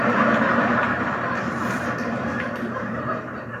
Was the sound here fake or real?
fake